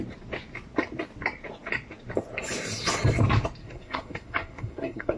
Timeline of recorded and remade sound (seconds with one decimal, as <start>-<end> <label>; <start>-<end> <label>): 0.0-3.6 recorded; 3.6-5.2 remade